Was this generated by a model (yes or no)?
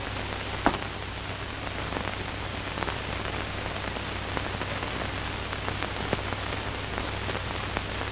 no